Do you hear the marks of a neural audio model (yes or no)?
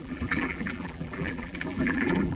yes